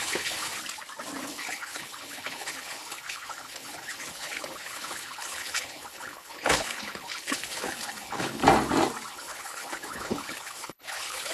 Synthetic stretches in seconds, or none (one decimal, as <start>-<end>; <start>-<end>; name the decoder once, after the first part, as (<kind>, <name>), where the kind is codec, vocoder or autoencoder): 0.0-0.5 (codec, HILCodec); 1.2-8.4; 9.1-11.3